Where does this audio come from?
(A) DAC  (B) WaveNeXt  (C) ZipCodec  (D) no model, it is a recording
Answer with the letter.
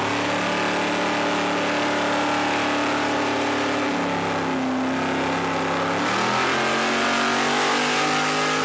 D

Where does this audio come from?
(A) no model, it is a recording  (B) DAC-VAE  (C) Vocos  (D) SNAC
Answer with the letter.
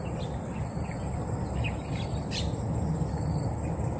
A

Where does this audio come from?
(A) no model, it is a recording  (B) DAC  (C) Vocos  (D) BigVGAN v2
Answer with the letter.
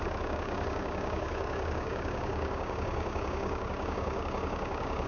B